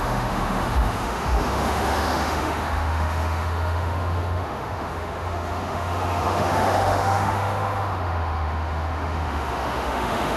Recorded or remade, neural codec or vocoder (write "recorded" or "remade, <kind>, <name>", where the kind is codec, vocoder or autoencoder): remade, autoencoder, DAC-VAE